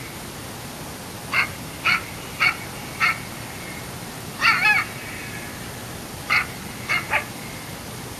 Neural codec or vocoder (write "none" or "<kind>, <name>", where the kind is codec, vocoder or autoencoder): none